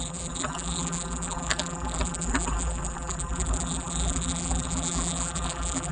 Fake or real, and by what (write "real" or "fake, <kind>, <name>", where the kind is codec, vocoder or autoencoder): fake, vocoder, BigVGAN v2